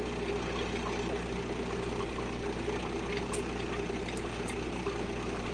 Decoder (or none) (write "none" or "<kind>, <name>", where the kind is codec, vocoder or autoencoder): none